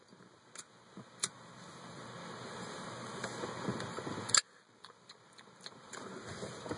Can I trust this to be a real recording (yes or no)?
yes